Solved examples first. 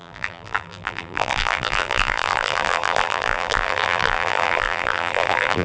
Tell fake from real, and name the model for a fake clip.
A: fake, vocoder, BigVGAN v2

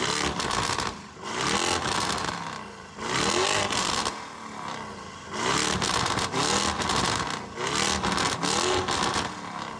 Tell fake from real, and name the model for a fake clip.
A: real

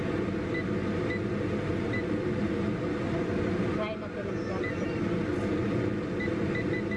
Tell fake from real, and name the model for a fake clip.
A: real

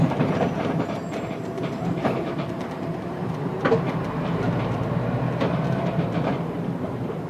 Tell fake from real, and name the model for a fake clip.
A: fake, vocoder, BigVGAN v2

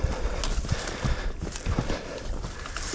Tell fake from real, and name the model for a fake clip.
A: real